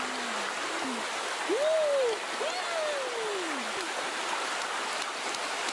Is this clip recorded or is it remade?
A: recorded